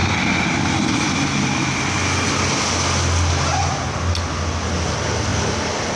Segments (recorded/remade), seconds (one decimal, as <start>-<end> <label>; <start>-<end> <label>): 0.0-6.0 recorded